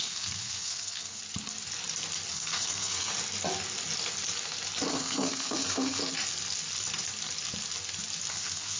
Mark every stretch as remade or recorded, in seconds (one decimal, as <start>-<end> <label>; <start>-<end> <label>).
0.0-1.2 remade; 1.2-2.3 recorded; 2.3-3.1 remade; 3.1-4.9 recorded; 4.9-6.0 remade; 6.0-8.3 recorded; 8.3-8.8 remade